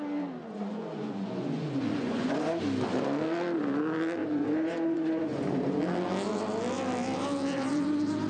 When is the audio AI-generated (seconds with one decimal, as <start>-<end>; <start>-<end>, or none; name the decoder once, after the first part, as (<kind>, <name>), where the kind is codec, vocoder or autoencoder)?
0.4-2.6 (vocoder, Vocos); 4.2-5.8